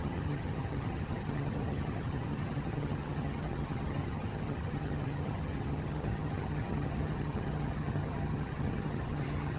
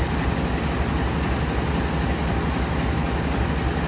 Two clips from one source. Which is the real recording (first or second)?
second